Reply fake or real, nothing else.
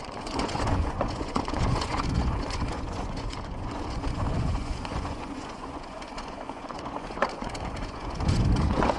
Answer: fake